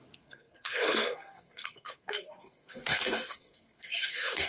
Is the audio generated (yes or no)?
yes